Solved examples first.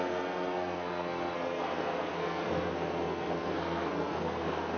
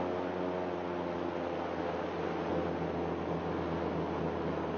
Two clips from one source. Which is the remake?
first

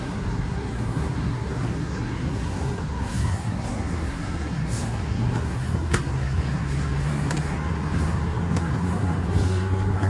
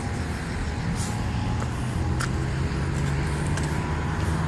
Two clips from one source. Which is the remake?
first